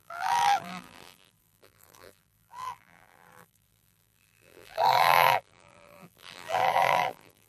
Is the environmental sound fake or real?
fake